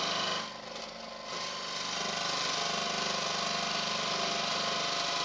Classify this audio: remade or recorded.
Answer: recorded